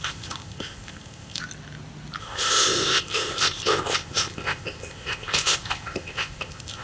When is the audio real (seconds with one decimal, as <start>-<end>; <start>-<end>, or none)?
1.4-2.2